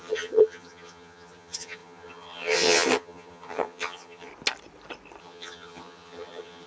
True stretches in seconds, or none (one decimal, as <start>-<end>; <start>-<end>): 4.3-5.2